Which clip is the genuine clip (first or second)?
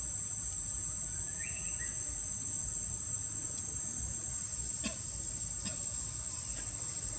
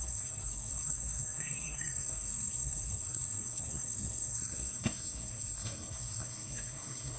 first